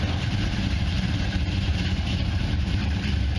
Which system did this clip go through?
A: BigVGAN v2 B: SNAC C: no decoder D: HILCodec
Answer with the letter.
A